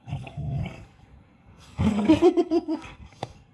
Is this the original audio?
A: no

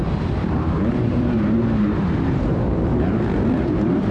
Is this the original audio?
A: no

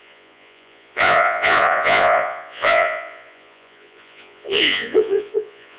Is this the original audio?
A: no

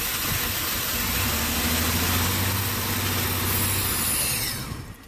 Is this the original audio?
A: yes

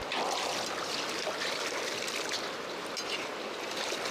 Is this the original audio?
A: yes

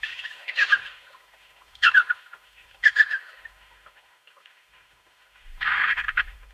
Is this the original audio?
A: no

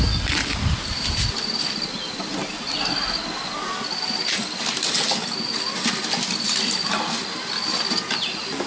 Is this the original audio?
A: yes